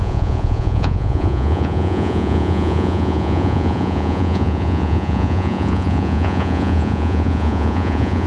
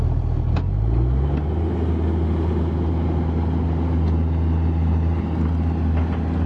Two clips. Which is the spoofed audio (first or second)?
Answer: first